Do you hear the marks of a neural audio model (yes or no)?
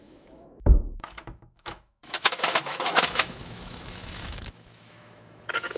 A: yes